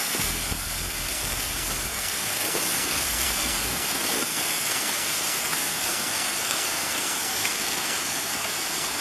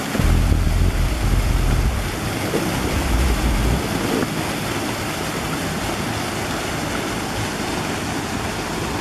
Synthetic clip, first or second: first